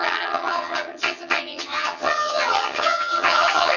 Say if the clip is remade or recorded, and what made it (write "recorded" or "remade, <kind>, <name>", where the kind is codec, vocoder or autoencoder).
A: remade, vocoder, HiFi-GAN